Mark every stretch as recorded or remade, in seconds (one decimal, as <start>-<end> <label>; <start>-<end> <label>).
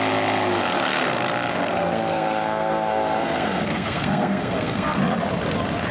0.0-1.5 recorded; 1.5-5.0 remade; 5.0-5.9 recorded